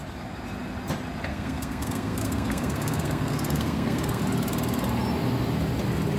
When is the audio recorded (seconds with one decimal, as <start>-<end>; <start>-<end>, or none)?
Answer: 0.0-1.3; 4.2-6.2